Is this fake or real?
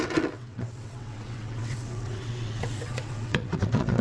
fake